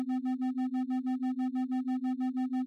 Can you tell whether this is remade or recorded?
recorded